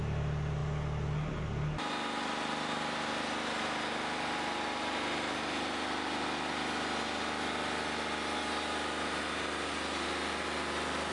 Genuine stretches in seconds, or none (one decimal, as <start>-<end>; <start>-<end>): 0.0-11.1